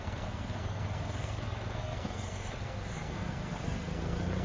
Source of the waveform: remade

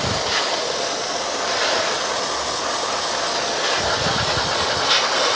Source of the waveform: recorded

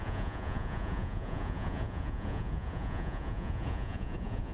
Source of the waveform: remade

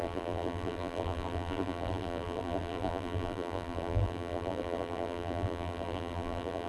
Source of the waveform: remade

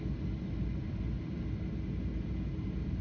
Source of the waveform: recorded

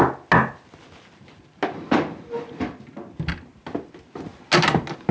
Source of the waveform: recorded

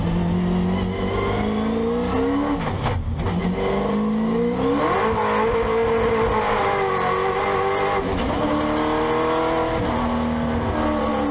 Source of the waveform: recorded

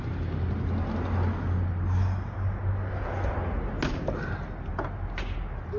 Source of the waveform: recorded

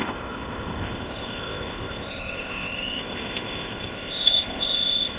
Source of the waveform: remade